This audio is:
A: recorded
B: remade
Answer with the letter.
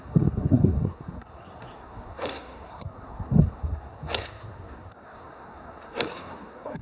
B